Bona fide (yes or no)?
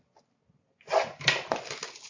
yes